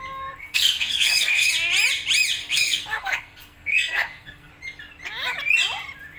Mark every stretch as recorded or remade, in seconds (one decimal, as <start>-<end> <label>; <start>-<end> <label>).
0.0-0.4 recorded; 0.4-1.5 remade; 1.5-2.4 recorded; 2.4-4.5 remade; 4.5-6.2 recorded